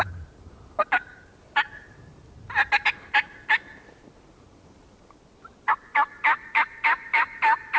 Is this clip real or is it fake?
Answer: real